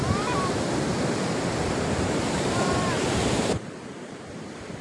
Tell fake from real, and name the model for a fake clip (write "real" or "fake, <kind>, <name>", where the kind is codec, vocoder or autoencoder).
fake, vocoder, BigVGAN v2